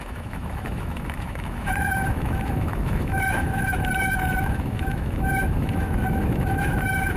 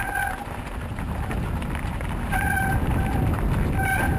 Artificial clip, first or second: first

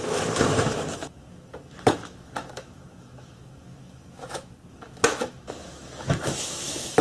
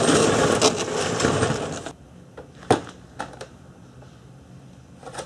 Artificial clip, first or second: first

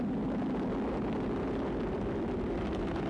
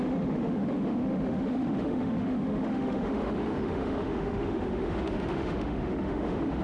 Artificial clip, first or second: second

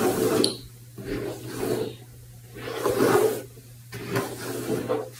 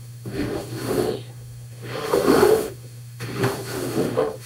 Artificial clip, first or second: second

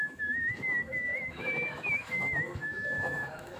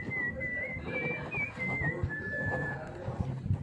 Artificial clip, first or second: first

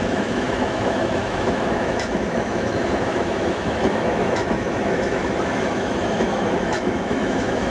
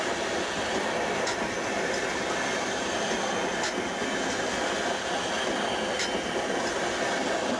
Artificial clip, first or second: first